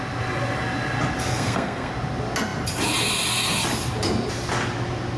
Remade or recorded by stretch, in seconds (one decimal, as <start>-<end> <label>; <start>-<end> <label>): 0.0-1.3 recorded; 1.3-1.9 remade; 1.9-5.2 recorded